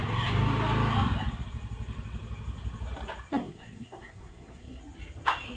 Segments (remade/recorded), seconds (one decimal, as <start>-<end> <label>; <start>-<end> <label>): 0.0-3.3 recorded; 3.3-4.8 remade; 4.8-5.6 recorded